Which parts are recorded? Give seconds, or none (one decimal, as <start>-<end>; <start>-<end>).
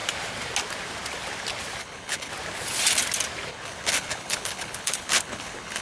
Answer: 0.0-1.8; 2.3-3.5